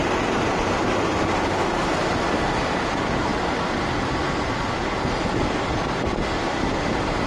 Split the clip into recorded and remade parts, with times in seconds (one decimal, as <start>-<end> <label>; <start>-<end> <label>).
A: 0.0-7.3 recorded